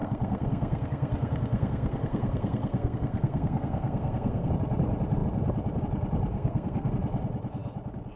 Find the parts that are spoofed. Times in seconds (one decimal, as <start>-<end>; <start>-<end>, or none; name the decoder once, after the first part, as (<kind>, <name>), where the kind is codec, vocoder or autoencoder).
0.0-4.5 (codec, SNAC); 6.3-6.9